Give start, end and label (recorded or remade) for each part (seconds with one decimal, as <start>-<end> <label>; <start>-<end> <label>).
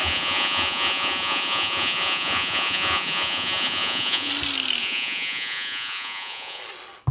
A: 0.0-4.3 remade; 4.3-4.8 recorded; 4.8-6.6 remade; 6.6-7.1 recorded